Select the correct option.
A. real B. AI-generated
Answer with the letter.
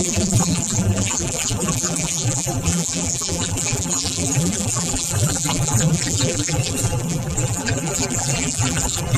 B